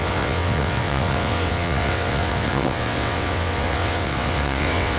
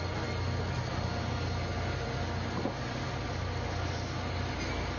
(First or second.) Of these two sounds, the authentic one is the second